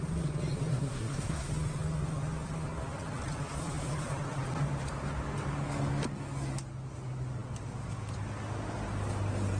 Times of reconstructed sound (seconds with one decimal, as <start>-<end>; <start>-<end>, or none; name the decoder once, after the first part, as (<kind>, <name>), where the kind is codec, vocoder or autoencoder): 0.7-1.5 (codec, SNAC)